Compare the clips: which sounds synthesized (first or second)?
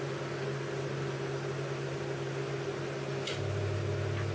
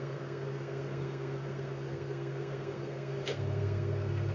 second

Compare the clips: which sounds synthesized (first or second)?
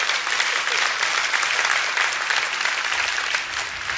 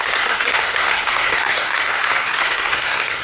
second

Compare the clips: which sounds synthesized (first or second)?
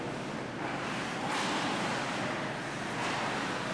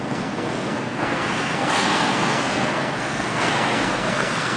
second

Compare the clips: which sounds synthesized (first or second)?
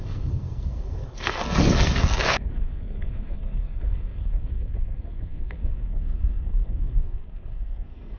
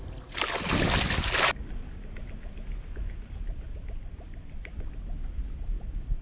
first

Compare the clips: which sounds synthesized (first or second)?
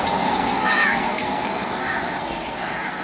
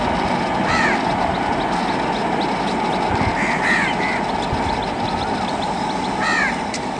first